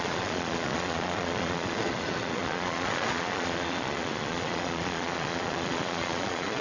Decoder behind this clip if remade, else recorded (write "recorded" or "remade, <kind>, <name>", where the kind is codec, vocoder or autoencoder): remade, vocoder, Vocos